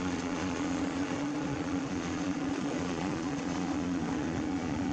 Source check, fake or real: fake